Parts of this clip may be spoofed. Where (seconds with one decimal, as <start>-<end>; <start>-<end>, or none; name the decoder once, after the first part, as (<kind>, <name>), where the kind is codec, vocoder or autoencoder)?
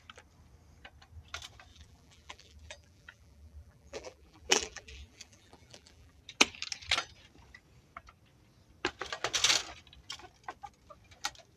1.7-6.2 (vocoder, BigVGAN v2)